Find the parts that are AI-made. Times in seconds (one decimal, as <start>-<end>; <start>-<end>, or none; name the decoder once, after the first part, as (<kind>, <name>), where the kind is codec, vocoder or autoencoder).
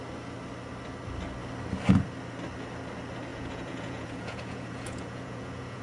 3.3-5.8 (vocoder, Vocos)